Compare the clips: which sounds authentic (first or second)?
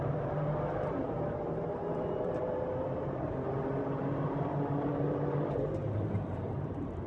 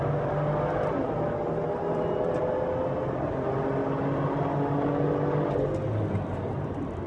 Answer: second